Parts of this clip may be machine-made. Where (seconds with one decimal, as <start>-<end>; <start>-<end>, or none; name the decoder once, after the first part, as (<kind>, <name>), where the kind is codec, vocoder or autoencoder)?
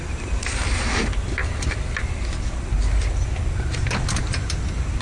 none